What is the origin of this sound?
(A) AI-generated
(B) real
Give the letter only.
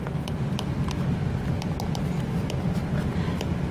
B